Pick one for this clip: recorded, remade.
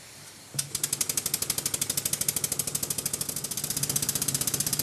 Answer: recorded